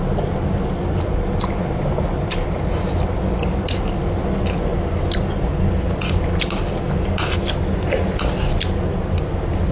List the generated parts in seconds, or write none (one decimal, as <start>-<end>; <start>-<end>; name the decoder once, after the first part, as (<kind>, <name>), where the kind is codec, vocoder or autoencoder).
1.6-2.6 (vocoder, BigVGAN v2)